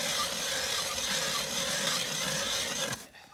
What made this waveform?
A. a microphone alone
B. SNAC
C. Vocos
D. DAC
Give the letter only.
A